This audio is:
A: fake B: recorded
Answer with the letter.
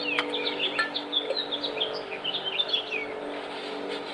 B